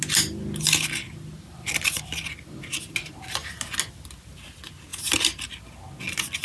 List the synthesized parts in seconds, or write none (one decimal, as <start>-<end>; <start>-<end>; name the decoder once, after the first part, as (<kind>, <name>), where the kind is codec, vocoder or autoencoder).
none